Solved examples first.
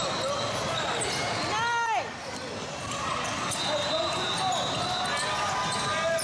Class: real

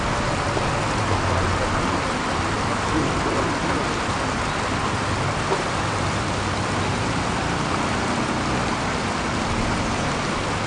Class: real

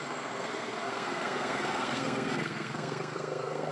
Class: fake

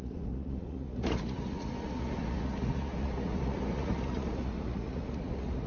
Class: fake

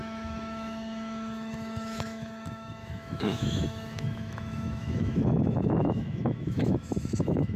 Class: fake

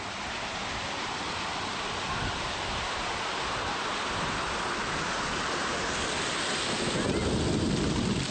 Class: real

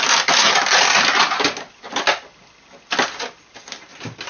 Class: real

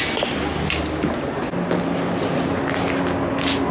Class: real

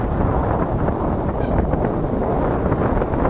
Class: real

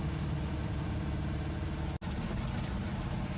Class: real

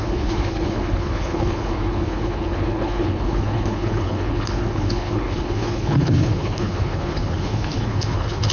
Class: fake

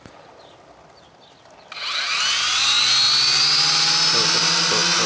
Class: real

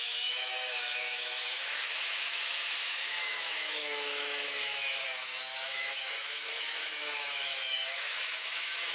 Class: fake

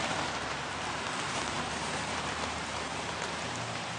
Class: fake